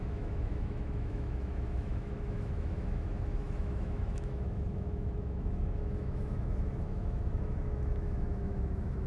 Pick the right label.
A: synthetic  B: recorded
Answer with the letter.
A